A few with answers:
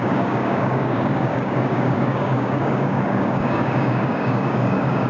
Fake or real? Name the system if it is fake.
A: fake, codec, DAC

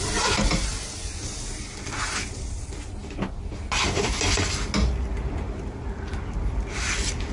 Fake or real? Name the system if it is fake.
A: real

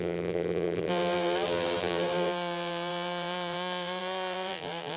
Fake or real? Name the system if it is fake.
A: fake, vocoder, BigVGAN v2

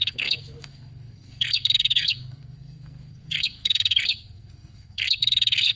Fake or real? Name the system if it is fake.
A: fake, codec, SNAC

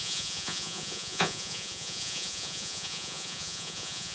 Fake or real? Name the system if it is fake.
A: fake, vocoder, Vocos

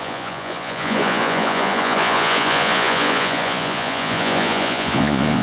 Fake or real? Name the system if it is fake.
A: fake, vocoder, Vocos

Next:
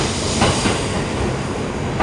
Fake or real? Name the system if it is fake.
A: real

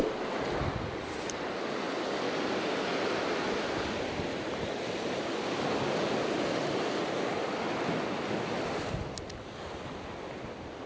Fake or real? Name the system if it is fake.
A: real